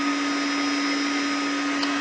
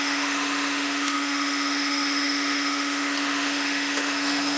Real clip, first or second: first